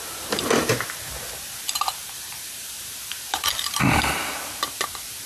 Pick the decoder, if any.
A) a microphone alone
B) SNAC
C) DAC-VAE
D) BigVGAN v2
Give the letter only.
D